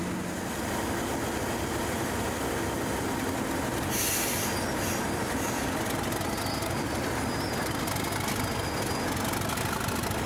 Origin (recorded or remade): recorded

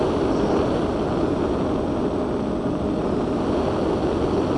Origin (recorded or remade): recorded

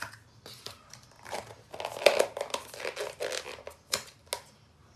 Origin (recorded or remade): recorded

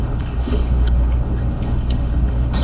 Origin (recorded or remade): remade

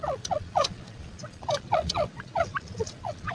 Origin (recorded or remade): remade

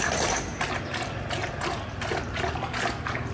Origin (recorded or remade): recorded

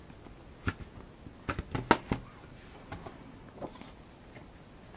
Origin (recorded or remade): recorded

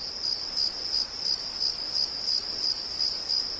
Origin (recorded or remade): recorded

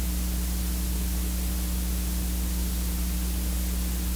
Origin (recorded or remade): recorded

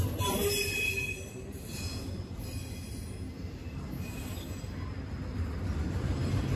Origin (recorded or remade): recorded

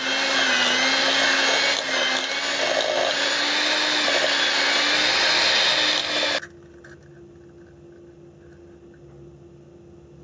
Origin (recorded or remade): recorded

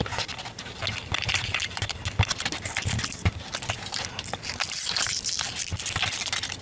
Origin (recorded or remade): recorded